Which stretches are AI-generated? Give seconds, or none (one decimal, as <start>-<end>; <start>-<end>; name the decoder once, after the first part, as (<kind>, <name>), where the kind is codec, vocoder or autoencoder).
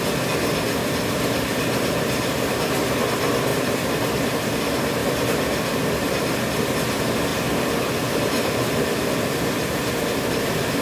0.8-2.8 (vocoder, BigVGAN v2); 3.5-4.6; 5.0-6.0; 7.3-9.9